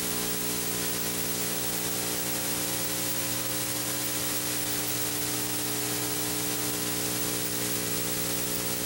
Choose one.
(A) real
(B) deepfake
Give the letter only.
A